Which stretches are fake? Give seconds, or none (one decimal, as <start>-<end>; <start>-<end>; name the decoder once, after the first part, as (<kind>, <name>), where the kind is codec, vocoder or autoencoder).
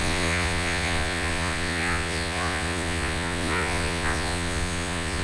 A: 0.0-5.2 (vocoder, Vocos)